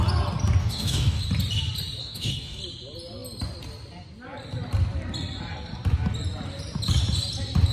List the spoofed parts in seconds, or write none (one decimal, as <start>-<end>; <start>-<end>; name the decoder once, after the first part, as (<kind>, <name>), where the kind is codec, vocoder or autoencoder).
0.6-1.2 (codec, DAC); 2.0-2.6